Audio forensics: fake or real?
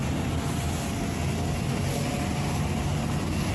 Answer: real